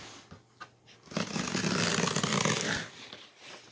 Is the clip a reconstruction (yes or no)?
no